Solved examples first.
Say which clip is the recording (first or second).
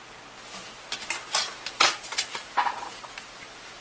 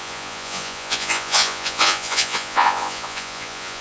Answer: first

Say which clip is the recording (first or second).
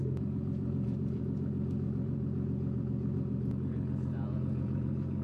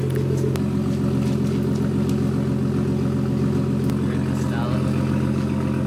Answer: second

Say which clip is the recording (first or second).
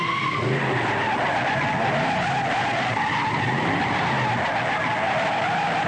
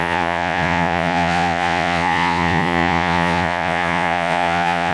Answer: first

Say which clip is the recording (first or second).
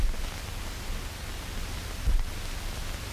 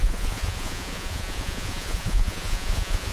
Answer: first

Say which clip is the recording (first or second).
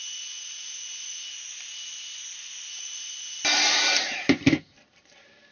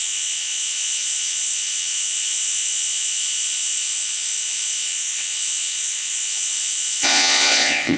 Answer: first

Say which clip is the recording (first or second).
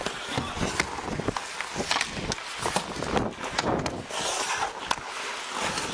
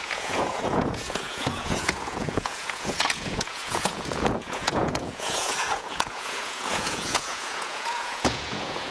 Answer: first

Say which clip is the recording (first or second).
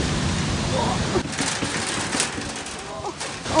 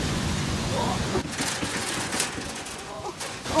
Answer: first